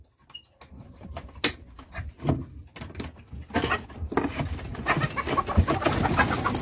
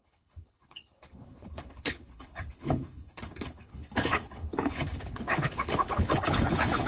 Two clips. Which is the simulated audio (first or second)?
second